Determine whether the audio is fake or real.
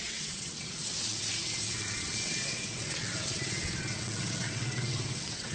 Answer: fake